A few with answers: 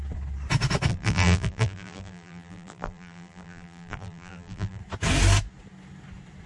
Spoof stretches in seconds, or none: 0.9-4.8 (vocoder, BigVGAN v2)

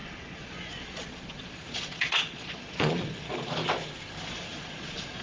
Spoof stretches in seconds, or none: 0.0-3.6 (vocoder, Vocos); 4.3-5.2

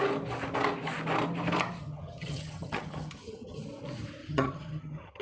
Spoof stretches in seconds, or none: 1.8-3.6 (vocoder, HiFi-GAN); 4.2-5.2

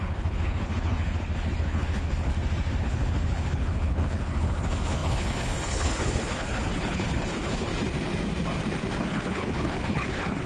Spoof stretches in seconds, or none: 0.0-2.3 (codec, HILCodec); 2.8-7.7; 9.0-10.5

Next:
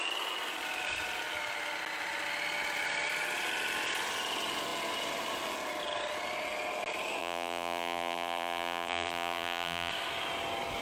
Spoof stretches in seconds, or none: 7.2-9.9 (vocoder, BigVGAN v2)

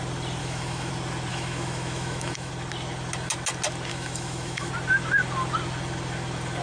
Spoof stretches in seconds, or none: 0.4-0.9 (autoencoder, DAC-VAE); 1.3-2.5; 3.9-4.7

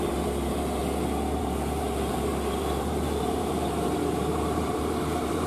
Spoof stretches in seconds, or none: 0.0-0.8 (vocoder, BigVGAN v2); 1.4-5.5

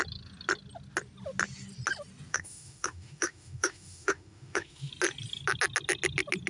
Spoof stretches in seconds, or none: 2.3-4.9 (autoencoder, DAC-VAE)